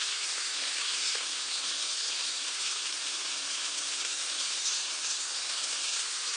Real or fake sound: fake